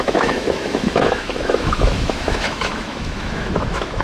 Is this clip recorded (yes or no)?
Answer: no